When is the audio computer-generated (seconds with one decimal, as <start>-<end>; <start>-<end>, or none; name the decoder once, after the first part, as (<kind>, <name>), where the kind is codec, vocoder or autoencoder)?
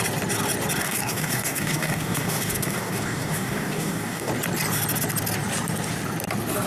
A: 0.8-4.3 (codec, DAC)